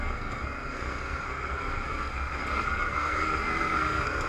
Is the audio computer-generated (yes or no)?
yes